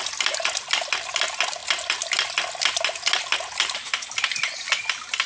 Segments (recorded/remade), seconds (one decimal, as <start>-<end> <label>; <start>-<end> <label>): 0.0-5.3 recorded